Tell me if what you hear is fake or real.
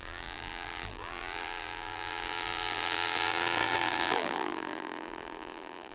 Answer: fake